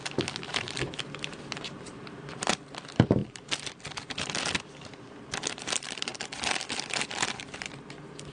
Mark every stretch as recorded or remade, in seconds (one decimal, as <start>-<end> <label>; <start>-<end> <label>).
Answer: 0.0-1.0 recorded; 1.0-6.1 remade; 6.1-7.4 recorded; 7.4-8.3 remade